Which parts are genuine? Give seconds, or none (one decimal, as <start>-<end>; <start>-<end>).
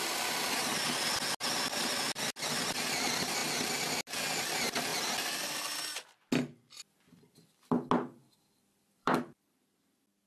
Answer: 0.0-8.2; 9.9-10.3